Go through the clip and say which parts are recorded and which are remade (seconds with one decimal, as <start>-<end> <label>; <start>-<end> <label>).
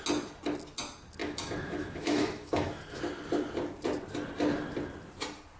0.0-1.2 recorded; 1.2-3.0 remade; 3.0-5.6 recorded